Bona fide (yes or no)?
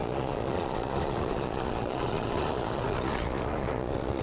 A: no